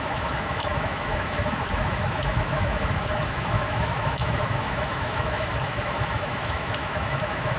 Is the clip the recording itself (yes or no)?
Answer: no